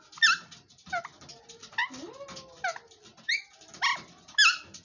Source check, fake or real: real